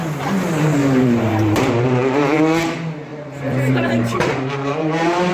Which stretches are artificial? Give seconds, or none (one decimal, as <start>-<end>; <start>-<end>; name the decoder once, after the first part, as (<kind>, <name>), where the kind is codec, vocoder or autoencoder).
0.8-2.4 (vocoder, BigVGAN v2); 3.1-5.3